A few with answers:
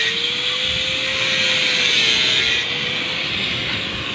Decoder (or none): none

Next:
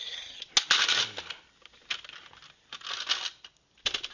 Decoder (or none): none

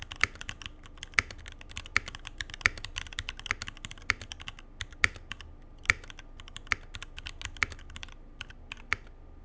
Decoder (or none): none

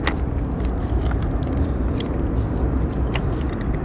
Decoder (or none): none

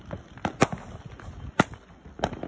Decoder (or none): none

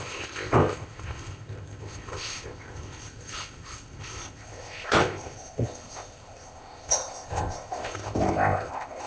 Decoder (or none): codec, ZipCodec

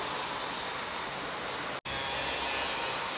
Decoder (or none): none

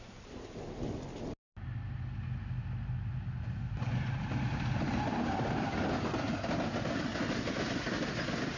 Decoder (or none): none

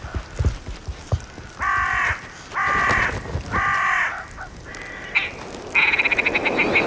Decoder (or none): none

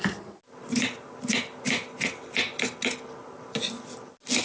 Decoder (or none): none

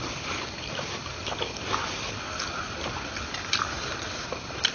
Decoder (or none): none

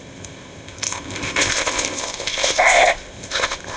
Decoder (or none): codec, ZipCodec